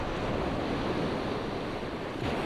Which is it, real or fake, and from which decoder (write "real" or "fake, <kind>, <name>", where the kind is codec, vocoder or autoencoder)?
real